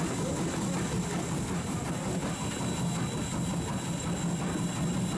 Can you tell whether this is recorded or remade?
recorded